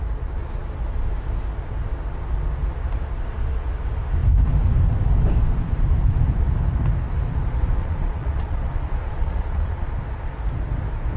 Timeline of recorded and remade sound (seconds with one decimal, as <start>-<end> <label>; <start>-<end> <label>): 0.0-7.8 recorded; 7.8-9.9 remade; 9.9-11.2 recorded